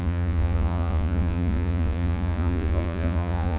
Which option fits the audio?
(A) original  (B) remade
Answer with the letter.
B